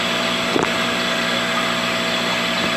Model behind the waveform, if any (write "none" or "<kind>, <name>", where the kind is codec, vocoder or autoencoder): vocoder, BigVGAN v2